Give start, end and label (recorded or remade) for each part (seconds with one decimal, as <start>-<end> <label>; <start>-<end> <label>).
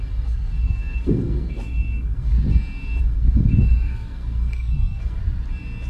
0.0-2.3 remade; 2.3-3.0 recorded; 3.0-5.2 remade; 5.2-5.9 recorded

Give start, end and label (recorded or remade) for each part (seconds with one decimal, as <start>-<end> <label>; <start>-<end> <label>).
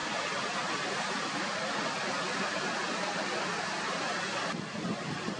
0.0-0.9 recorded; 0.9-1.5 remade; 1.5-4.7 recorded; 4.7-5.4 remade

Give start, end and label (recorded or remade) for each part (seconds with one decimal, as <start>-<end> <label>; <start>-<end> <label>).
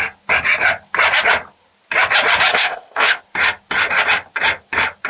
0.0-2.5 recorded; 2.5-3.2 remade; 3.2-5.1 recorded